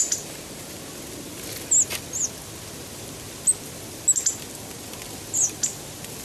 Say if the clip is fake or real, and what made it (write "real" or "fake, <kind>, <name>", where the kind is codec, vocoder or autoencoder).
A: real